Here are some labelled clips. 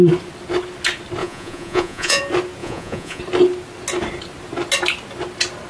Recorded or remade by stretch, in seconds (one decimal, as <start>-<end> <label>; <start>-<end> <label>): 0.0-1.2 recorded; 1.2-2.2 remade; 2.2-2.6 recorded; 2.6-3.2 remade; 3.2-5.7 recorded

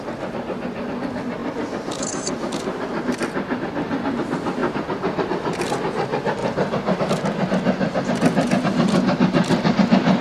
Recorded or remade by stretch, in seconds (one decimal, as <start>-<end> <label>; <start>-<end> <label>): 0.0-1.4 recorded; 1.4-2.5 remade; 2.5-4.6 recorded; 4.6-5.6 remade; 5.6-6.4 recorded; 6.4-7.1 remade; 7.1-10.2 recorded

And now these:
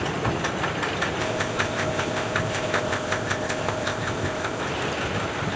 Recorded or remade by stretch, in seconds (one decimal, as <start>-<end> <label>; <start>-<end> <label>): 0.0-1.2 recorded; 1.2-4.6 remade; 4.6-5.6 recorded

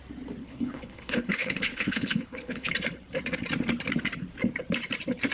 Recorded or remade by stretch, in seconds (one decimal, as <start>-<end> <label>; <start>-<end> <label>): 0.0-0.4 recorded; 0.4-2.7 remade; 2.7-5.3 recorded